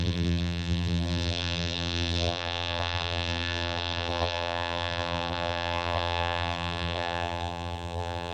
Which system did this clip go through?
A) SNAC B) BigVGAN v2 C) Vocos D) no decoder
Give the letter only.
B